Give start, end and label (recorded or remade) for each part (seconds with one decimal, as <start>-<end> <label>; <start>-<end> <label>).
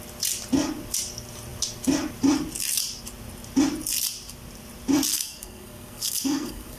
0.0-5.1 recorded; 5.1-6.8 remade